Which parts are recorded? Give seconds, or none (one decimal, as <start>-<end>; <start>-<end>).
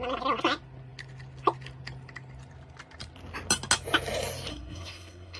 0.0-4.5